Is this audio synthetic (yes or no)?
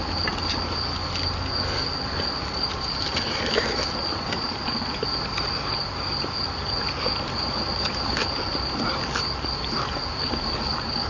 no